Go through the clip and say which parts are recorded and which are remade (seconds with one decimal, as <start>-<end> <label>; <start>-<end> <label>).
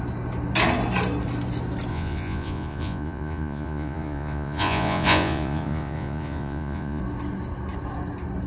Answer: 0.0-1.9 recorded; 1.9-7.0 remade; 7.0-8.5 recorded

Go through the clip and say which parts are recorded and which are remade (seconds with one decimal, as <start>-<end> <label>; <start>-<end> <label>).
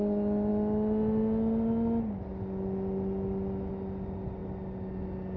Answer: 0.0-5.4 recorded